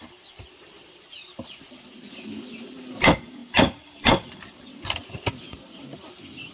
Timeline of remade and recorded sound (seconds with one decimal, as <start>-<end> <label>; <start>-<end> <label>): 0.0-6.5 remade